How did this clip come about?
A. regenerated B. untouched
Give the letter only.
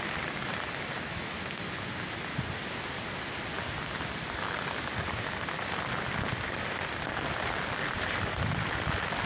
B